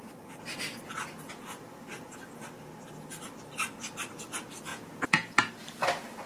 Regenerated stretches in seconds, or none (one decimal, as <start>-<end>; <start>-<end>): 4.7-5.5